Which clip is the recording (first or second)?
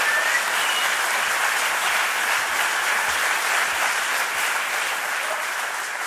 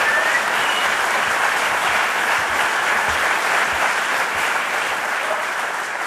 first